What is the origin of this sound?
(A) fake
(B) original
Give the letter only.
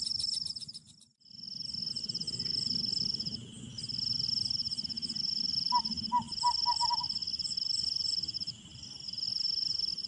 B